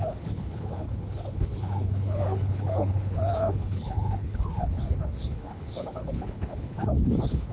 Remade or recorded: remade